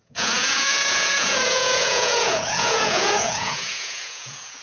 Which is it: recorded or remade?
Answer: remade